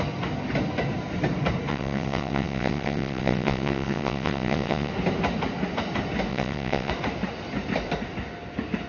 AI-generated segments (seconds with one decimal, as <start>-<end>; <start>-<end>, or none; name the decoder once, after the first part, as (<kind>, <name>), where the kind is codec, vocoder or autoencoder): 1.7-4.9 (vocoder, WaveNeXt); 6.3-6.9